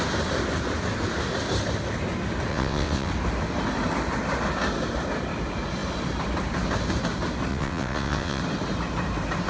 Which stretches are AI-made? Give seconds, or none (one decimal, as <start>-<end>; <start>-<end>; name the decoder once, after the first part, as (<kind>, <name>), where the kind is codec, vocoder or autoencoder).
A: 2.5-3.1 (vocoder, WaveNeXt); 7.5-8.4